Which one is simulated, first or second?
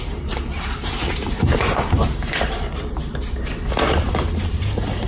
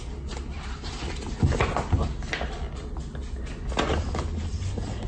first